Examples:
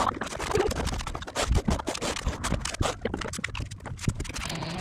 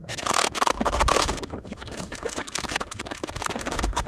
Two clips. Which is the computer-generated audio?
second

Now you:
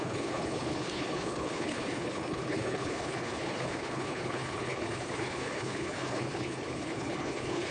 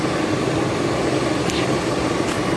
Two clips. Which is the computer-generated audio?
first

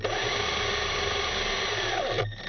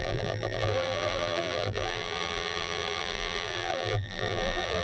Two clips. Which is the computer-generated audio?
second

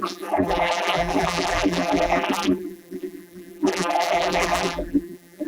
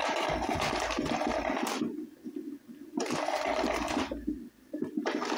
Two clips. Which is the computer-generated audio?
first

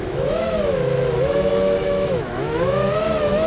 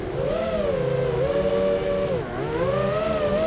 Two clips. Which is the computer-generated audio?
first